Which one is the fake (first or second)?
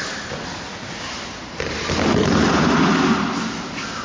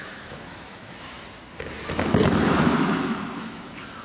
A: second